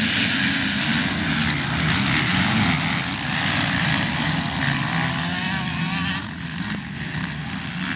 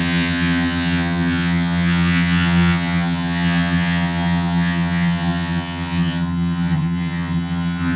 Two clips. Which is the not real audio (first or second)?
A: second